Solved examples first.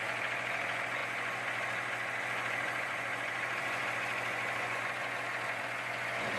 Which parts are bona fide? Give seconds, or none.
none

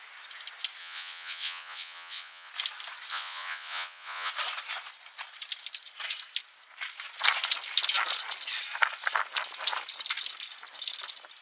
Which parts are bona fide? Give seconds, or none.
0.0-0.8; 2.5-3.1; 4.3-11.4

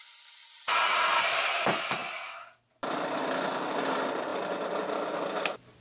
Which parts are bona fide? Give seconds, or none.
0.0-0.4; 1.2-5.8

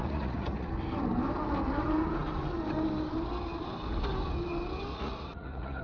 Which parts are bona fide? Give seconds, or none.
0.7-4.9

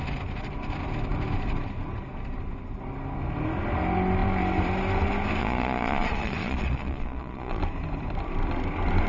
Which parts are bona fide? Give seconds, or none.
0.0-5.4; 7.6-9.1

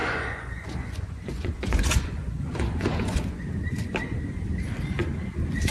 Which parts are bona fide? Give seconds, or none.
3.4-5.7

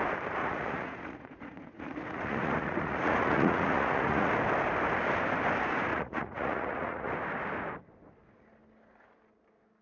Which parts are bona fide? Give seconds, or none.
0.0-0.4; 4.3-5.9; 7.1-9.8